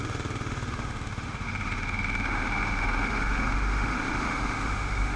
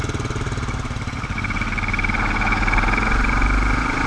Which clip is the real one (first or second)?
second